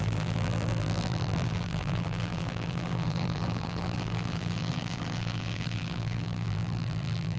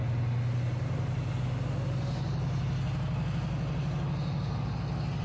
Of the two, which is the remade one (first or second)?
first